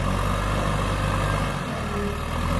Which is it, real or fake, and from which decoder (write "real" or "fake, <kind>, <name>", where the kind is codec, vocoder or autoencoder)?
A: real